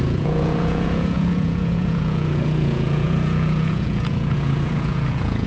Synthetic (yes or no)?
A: yes